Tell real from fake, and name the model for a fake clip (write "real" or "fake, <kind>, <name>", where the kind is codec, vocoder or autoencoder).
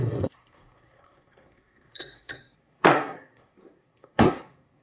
fake, codec, SNAC